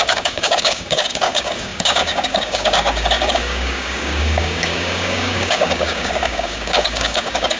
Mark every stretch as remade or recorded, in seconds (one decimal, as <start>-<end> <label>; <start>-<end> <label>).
0.0-7.6 remade